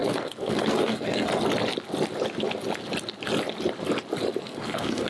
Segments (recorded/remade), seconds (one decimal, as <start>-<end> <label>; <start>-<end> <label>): 0.0-1.3 remade; 1.3-4.4 recorded; 4.4-5.1 remade